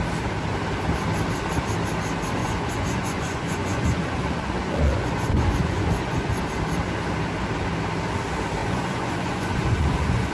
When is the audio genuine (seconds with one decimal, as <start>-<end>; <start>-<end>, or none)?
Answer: 0.0-2.4; 6.4-8.6